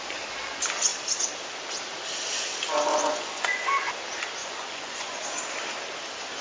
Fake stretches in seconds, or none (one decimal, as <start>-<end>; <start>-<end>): 2.9-3.9; 4.4-5.2